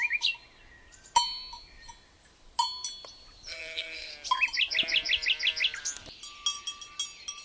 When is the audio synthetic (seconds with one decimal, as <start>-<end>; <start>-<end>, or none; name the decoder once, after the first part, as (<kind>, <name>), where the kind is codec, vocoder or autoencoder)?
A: 3.5-4.1 (codec, SNAC)